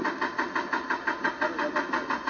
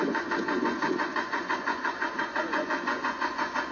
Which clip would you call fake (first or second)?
second